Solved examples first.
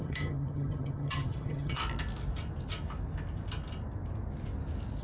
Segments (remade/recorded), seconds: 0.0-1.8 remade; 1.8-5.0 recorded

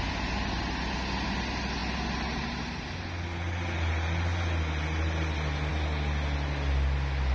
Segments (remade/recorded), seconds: 0.0-7.3 recorded

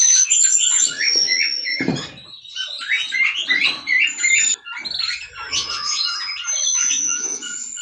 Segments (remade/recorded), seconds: 0.0-1.7 remade; 1.7-5.5 recorded; 5.5-6.1 remade; 6.1-6.8 recorded; 6.8-7.8 remade

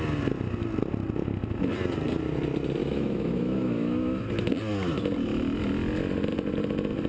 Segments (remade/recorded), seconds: 0.0-2.8 recorded; 2.8-4.3 remade; 4.3-7.1 recorded